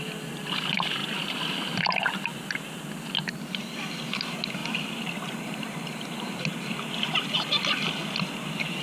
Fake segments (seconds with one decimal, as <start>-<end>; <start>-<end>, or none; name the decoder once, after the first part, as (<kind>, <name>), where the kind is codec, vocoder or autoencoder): 1.0-1.8 (vocoder, BigVGAN v2); 4.6-6.4